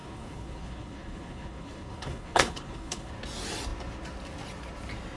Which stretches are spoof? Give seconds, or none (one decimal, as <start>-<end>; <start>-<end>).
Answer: 0.0-3.1